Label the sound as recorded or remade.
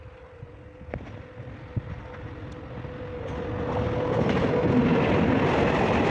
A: recorded